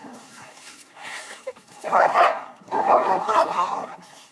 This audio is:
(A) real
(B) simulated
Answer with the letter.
B